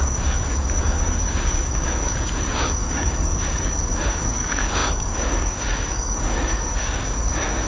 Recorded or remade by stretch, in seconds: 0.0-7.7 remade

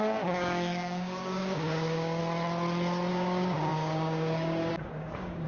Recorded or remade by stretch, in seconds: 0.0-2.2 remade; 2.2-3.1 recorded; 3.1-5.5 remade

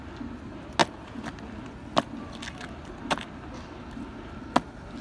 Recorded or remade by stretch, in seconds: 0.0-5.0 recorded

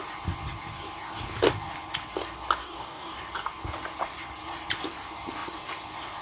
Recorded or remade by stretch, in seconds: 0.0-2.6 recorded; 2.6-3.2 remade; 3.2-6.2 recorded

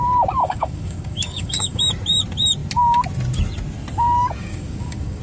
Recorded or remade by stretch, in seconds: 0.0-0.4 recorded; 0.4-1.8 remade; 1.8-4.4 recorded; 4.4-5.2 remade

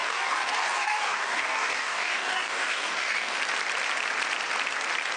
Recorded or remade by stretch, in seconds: 0.0-3.4 remade; 3.4-5.2 recorded

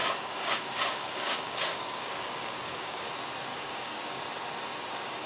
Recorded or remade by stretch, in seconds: 0.0-3.0 remade; 3.0-3.5 recorded; 3.5-4.2 remade; 4.2-5.3 recorded